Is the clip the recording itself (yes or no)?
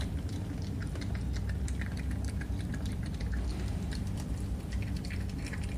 no